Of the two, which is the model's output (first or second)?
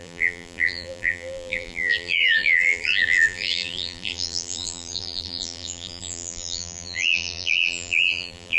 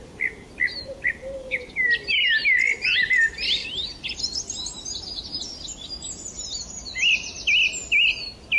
first